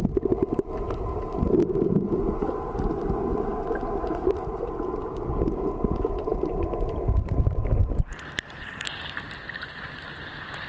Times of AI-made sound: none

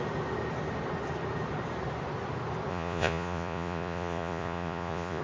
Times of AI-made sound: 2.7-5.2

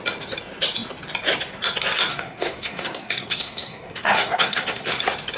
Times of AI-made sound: 2.1-5.0

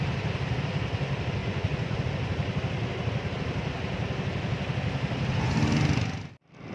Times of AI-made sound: 1.4-2.1